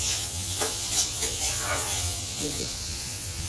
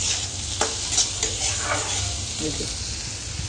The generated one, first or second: first